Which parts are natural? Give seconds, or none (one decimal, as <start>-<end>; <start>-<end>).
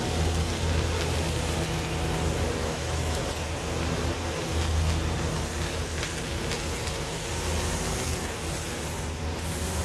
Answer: 0.0-2.6; 3.2-9.8